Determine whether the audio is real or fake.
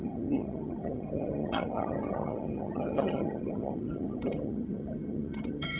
fake